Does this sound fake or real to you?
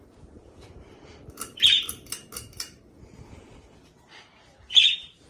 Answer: fake